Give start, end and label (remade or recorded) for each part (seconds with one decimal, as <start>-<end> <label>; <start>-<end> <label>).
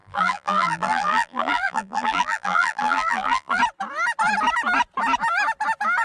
0.0-3.6 remade; 3.6-6.0 recorded